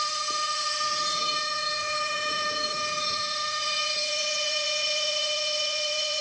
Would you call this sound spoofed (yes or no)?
yes